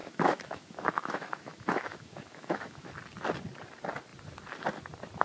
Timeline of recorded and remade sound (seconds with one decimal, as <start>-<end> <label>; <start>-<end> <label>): 0.0-2.9 remade; 2.9-5.2 recorded